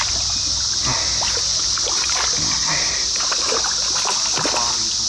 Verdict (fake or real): real